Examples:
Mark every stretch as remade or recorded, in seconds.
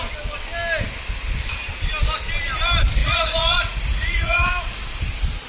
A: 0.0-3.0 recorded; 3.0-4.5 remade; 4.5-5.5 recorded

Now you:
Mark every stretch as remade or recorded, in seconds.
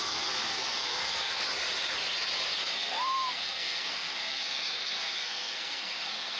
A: 0.0-1.4 remade; 1.4-2.6 recorded; 2.6-6.4 remade